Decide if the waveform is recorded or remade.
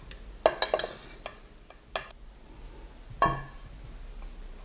recorded